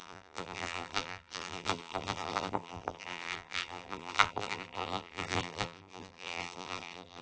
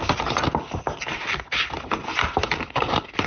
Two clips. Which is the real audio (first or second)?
second